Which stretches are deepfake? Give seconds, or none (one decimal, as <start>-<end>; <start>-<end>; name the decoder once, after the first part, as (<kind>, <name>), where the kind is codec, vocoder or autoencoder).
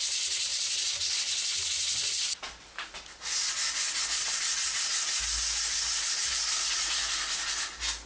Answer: 0.5-2.4 (vocoder, BigVGAN v2)